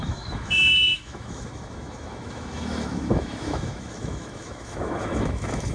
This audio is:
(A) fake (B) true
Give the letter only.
A